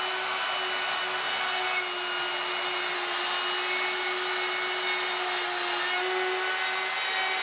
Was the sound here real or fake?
real